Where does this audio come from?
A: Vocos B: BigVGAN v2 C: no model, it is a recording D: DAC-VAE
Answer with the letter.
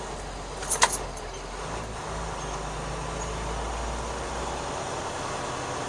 C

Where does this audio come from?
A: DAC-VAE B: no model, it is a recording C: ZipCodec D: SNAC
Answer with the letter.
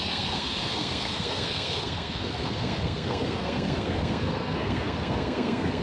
D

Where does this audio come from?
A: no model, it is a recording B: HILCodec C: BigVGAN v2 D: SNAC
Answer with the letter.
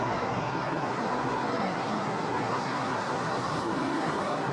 D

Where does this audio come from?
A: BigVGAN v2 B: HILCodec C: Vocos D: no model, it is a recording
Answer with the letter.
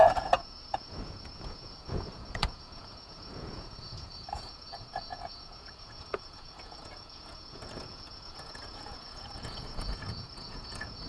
C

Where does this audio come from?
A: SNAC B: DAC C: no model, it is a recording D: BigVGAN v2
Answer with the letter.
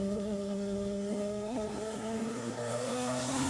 A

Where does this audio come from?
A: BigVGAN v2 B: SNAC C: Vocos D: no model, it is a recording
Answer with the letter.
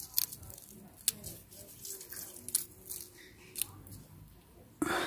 D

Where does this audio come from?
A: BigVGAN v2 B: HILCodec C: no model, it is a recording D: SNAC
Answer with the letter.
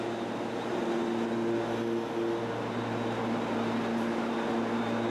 C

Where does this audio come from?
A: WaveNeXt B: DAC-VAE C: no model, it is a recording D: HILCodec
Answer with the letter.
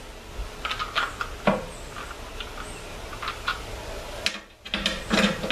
C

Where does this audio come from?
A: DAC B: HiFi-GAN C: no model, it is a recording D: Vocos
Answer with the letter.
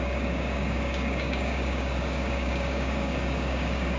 A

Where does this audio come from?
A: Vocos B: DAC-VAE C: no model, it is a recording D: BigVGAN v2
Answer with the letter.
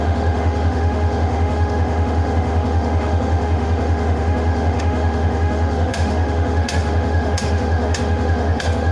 B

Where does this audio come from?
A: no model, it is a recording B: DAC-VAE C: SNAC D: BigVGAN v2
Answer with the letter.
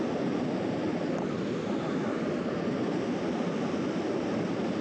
A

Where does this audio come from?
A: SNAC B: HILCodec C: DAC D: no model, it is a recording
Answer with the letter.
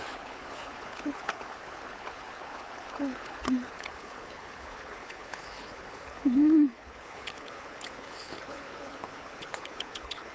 B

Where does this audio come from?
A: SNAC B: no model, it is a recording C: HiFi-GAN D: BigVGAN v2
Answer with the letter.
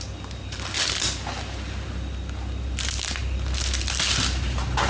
B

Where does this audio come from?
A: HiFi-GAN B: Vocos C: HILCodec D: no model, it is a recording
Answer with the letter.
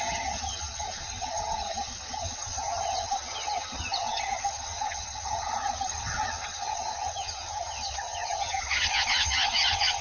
A